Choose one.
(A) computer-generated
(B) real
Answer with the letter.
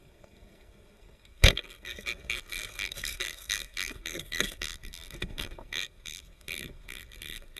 A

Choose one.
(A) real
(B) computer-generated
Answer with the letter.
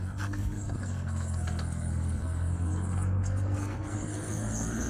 B